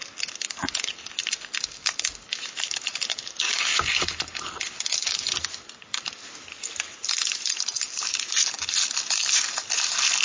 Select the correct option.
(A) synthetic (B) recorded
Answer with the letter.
B